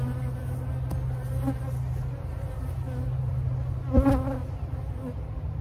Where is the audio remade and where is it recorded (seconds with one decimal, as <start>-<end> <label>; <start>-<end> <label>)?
0.0-5.6 recorded